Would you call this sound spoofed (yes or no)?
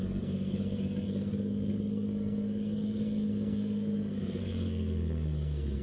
yes